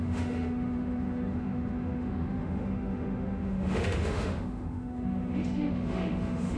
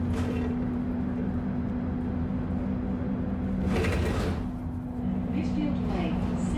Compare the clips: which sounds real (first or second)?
second